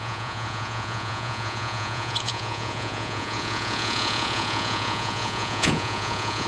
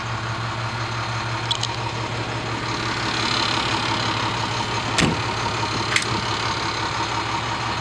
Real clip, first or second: second